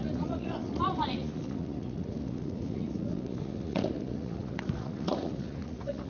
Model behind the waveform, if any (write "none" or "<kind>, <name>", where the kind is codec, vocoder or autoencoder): vocoder, Vocos